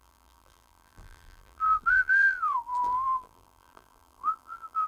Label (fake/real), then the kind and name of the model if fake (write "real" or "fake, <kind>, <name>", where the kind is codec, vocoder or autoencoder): fake, vocoder, BigVGAN v2